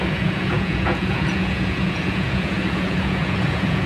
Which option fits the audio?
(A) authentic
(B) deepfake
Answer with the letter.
B